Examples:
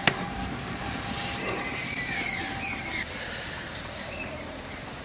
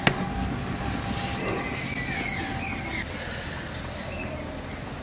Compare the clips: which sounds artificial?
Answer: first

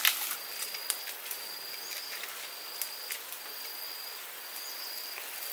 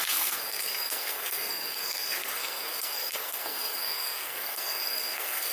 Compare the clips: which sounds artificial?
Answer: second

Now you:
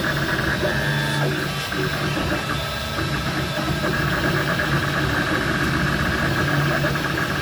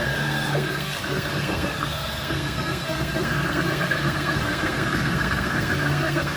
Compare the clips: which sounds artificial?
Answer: second